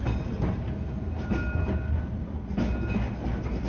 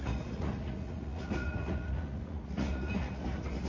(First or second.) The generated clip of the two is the second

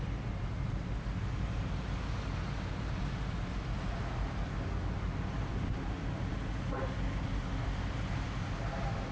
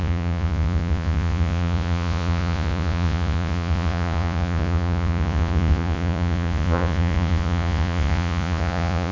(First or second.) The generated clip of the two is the second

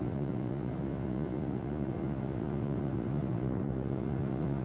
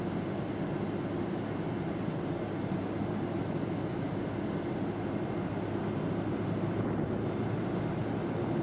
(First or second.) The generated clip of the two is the first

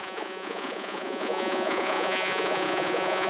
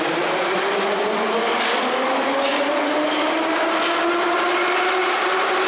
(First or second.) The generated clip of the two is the first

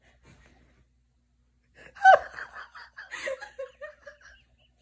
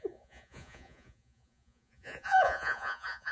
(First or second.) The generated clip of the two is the second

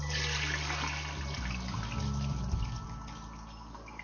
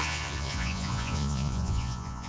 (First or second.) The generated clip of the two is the second